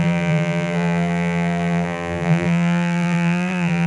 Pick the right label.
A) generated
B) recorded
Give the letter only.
A